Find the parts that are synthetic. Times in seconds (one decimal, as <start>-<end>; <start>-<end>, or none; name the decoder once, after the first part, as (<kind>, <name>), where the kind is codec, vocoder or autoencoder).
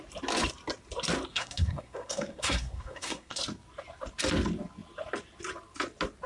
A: 1.3-3.4 (codec, SNAC)